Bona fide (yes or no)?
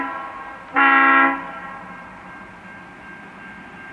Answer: yes